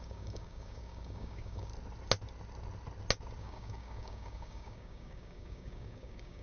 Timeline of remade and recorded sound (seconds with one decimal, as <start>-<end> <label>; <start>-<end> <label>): 0.0-1.7 remade; 1.7-3.4 recorded; 3.4-6.4 remade